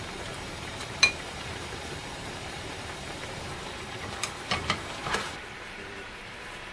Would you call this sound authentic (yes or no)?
no